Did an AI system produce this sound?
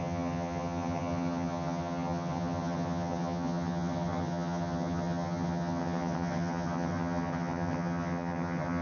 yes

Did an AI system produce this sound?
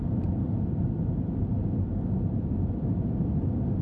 no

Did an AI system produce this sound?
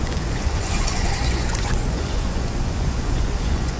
yes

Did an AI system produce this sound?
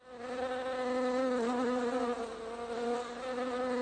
no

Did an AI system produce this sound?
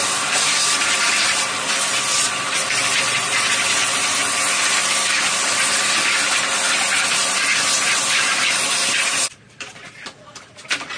yes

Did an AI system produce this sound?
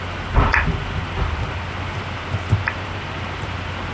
yes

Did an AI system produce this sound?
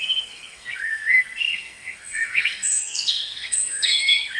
yes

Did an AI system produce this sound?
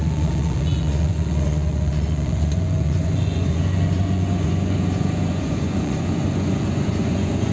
yes